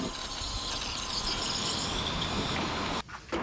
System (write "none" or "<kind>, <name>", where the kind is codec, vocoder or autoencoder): none